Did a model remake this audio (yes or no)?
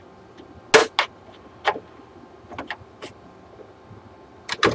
no